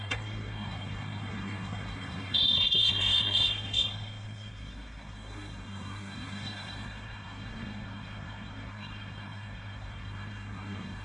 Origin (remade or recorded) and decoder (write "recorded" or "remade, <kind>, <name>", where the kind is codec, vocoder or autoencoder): remade, codec, SNAC